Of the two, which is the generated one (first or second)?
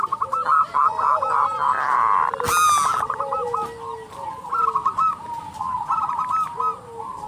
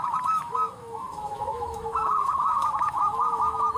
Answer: second